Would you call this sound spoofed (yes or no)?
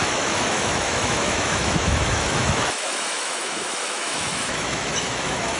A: yes